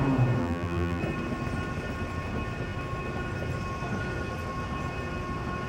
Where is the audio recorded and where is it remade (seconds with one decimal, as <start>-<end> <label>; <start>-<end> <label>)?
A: 0.0-0.4 recorded; 0.4-1.0 remade; 1.0-5.7 recorded